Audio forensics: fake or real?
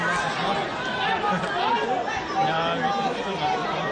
real